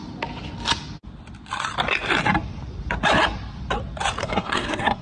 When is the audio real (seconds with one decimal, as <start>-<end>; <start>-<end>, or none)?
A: 0.0-4.2